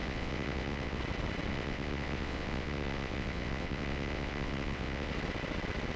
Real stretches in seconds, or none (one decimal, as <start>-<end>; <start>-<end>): 1.0-1.5; 5.1-6.0

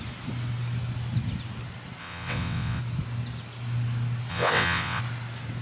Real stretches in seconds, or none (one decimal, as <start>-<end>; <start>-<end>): 0.0-2.0; 2.8-4.3; 5.0-5.6

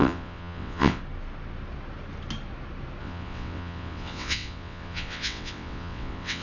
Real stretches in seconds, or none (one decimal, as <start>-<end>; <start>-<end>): 1.0-3.0

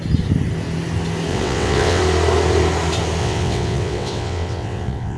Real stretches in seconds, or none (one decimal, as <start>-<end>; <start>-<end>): 0.0-1.3; 2.0-3.2

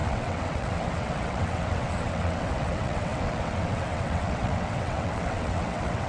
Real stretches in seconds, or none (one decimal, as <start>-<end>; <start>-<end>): none

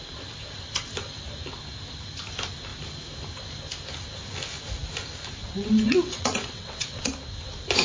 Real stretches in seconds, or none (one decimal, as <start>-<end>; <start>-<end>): 0.0-5.4; 7.1-7.8

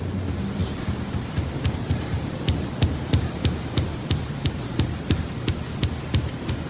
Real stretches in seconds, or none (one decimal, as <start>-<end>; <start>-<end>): 0.0-6.7